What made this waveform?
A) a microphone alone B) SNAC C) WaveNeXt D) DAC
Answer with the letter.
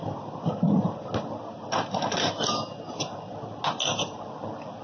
A